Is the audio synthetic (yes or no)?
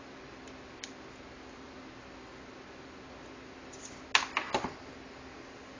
no